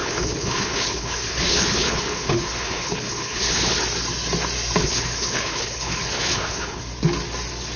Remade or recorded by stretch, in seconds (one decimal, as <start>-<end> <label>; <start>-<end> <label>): 0.0-3.8 remade; 3.8-4.8 recorded; 4.8-6.8 remade; 6.8-7.8 recorded